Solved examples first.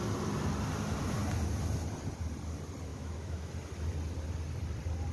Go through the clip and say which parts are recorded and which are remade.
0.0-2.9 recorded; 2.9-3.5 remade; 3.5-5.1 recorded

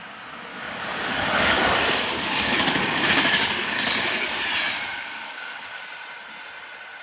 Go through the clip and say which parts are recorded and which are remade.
0.0-0.5 recorded; 0.5-4.3 remade; 4.3-4.9 recorded; 4.9-5.8 remade; 5.8-7.0 recorded

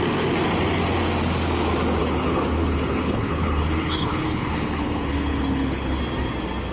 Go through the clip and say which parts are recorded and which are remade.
0.0-2.0 recorded; 2.0-6.0 remade; 6.0-6.7 recorded

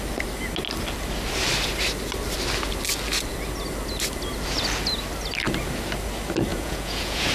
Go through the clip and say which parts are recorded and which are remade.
0.0-6.5 recorded; 6.5-7.3 remade

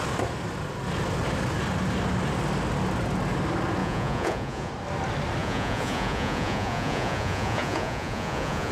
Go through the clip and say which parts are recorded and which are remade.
0.0-3.8 recorded; 3.8-4.7 remade; 4.7-5.4 recorded; 5.4-8.7 remade

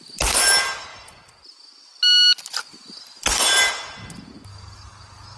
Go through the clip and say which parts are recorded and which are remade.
0.0-4.5 recorded; 4.5-5.4 remade

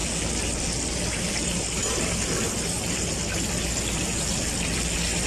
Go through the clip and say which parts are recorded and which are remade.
0.0-5.3 recorded